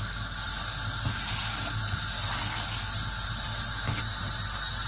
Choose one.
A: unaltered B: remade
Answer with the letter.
A